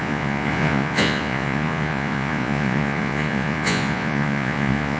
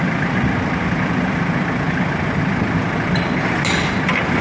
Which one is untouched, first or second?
second